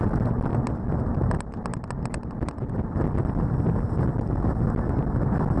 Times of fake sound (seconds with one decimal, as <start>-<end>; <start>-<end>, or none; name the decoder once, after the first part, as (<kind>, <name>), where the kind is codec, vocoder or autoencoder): 0.5-1.9 (vocoder, BigVGAN v2)